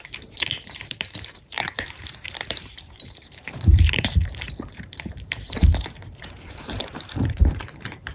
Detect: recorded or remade remade